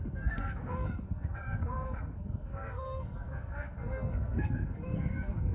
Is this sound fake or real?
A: fake